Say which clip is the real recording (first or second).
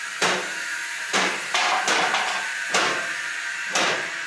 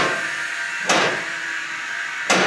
second